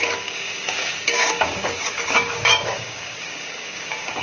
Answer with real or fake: fake